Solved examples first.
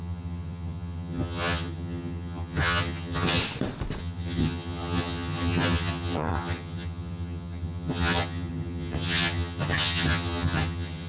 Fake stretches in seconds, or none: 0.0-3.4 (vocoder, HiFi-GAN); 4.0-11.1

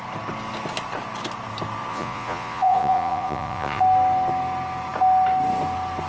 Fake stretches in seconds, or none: 1.9-3.8 (vocoder, Vocos)

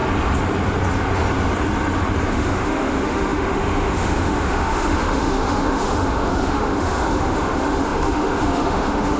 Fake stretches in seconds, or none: 2.3-9.2 (autoencoder, DAC-VAE)

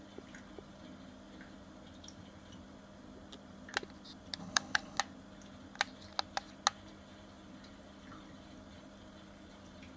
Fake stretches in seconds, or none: 4.4-5.0 (codec, HILCodec)